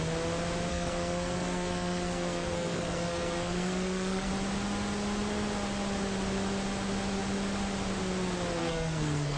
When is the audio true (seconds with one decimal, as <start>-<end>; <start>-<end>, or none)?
0.0-0.7; 4.3-8.6

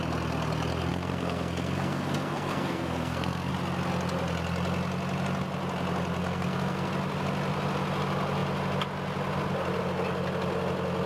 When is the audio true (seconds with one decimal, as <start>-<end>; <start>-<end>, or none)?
0.0-0.9; 3.5-6.2; 6.9-11.1

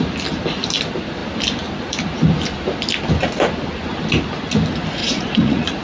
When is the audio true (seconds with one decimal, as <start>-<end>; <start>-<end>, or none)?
0.0-5.0

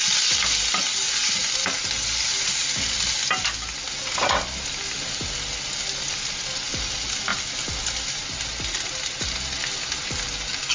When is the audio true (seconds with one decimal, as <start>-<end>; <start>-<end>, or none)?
0.0-10.7

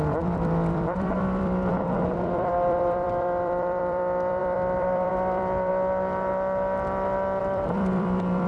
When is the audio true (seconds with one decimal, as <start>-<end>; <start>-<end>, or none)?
5.7-7.4

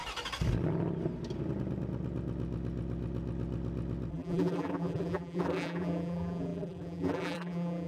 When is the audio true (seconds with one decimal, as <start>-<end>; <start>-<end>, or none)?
0.0-4.1

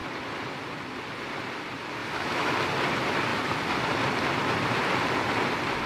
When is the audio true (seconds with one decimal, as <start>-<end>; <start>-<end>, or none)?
0.0-2.0; 2.5-5.9

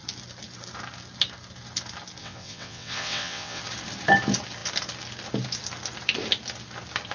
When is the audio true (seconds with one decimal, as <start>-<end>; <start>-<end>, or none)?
0.0-2.2; 3.6-7.1